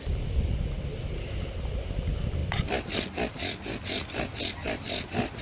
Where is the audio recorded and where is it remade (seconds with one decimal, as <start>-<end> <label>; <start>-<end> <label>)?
0.0-5.4 recorded